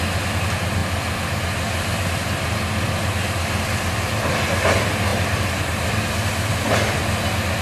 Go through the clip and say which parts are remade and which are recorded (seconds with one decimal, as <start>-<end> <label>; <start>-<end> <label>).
0.0-5.1 recorded; 5.1-5.8 remade; 5.8-7.6 recorded